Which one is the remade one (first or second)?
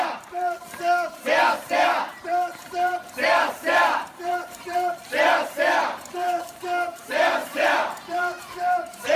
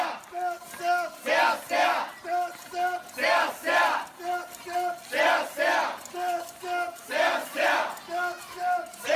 first